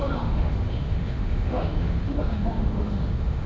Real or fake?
fake